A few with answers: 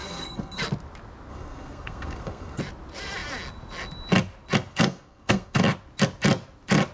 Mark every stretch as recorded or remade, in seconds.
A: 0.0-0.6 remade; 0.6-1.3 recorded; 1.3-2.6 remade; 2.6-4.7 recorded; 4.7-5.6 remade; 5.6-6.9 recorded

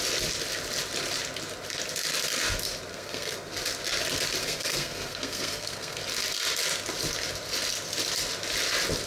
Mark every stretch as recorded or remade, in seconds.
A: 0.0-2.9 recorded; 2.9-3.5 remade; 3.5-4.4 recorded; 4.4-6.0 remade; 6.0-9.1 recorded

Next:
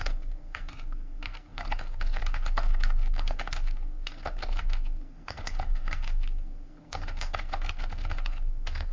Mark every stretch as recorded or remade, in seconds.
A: 0.0-8.9 remade

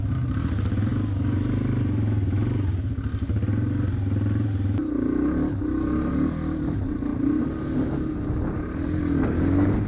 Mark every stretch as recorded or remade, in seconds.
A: 0.0-9.9 recorded